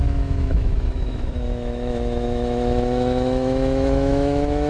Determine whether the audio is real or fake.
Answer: fake